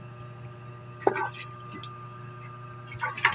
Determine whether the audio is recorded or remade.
recorded